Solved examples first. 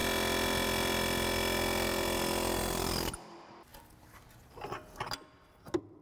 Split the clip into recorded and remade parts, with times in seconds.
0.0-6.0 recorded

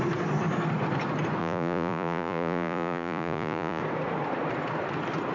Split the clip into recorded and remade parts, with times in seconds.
0.0-1.4 recorded; 1.4-3.8 remade; 3.8-5.3 recorded

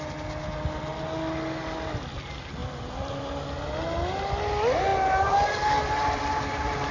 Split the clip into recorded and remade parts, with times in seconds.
0.0-2.6 recorded; 2.6-3.2 remade; 3.2-6.9 recorded

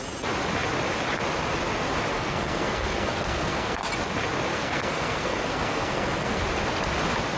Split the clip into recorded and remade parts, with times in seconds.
0.0-2.1 recorded; 2.1-3.9 remade; 3.9-4.5 recorded; 4.5-6.4 remade; 6.4-7.4 recorded

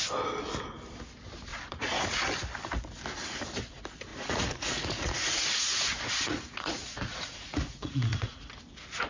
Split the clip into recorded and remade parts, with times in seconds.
0.0-1.5 recorded; 1.5-2.0 remade; 2.0-4.1 recorded; 4.1-8.6 remade; 8.6-9.1 recorded

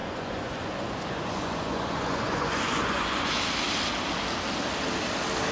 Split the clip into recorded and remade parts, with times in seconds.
0.0-3.3 remade; 3.3-5.5 recorded

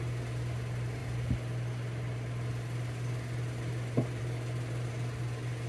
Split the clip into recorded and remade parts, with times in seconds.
0.0-5.7 recorded